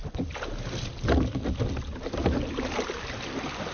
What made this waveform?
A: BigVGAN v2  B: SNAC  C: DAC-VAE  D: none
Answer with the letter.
D